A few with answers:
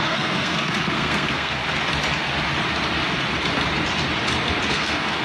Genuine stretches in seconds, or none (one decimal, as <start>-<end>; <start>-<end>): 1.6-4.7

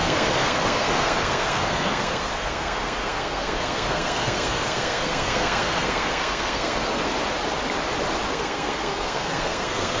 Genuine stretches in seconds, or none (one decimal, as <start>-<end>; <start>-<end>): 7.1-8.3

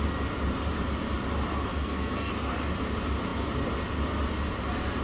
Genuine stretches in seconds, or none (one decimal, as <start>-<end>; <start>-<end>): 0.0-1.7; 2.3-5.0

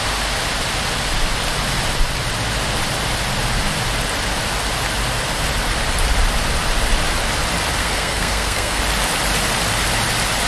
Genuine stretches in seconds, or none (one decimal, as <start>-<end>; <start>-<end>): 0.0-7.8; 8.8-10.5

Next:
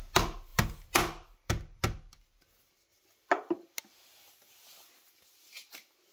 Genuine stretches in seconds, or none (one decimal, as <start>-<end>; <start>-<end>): 0.0-6.1

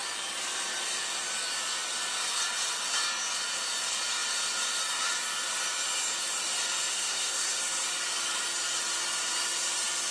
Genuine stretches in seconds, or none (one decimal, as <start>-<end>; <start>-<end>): 0.0-6.9; 7.6-10.1

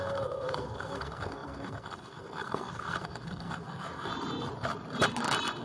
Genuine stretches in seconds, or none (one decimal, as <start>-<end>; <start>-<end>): 4.1-5.6

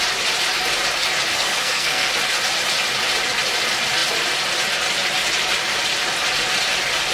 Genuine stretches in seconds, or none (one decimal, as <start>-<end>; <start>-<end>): 0.0-1.3; 2.1-7.1